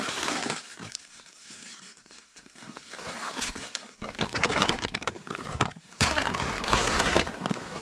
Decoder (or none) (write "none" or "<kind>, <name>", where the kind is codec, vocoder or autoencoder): codec, SNAC